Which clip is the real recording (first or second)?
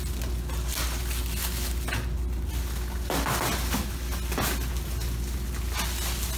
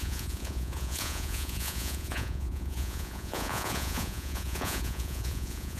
first